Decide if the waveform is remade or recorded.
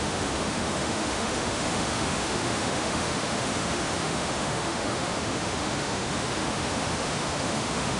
remade